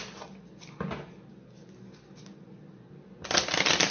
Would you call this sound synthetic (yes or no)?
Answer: no